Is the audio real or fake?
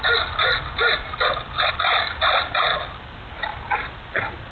real